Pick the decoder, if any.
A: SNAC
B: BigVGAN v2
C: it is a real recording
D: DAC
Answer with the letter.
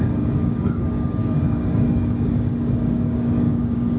D